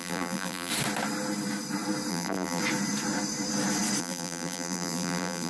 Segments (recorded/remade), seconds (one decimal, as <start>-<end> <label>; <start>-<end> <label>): 0.0-0.7 remade; 0.7-2.1 recorded; 2.1-2.6 remade; 2.6-4.0 recorded; 4.0-5.5 remade